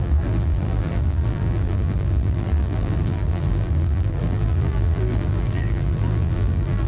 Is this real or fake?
fake